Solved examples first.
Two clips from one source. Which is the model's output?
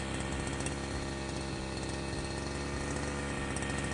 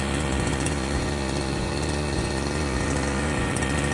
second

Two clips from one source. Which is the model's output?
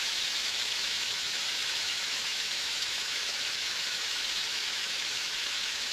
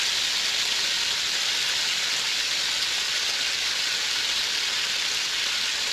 first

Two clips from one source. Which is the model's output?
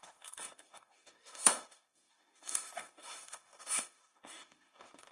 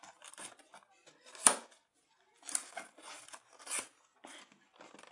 first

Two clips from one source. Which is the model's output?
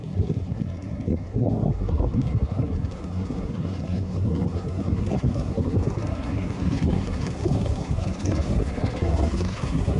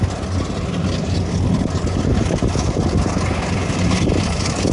first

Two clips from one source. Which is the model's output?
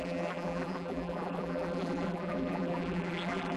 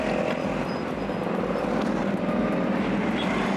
first